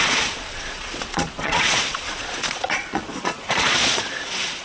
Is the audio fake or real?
fake